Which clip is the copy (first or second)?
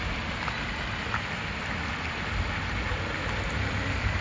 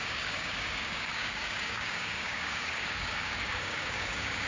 second